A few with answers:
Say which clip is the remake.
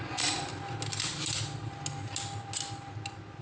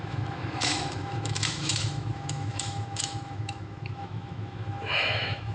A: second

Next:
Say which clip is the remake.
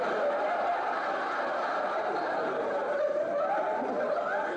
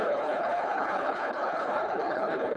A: second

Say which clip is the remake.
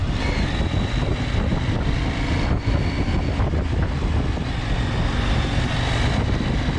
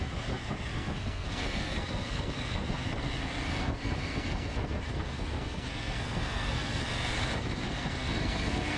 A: second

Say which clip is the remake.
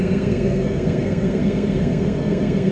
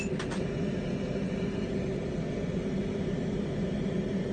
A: first